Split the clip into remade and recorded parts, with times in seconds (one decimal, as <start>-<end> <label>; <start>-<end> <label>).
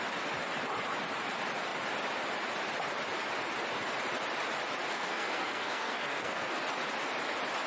0.0-4.9 recorded; 4.9-6.6 remade; 6.6-7.7 recorded